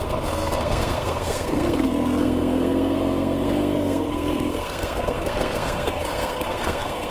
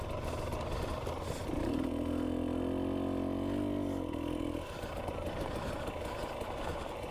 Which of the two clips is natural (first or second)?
second